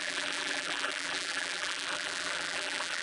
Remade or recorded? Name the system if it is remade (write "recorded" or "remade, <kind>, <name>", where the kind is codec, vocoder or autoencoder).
remade, vocoder, BigVGAN v2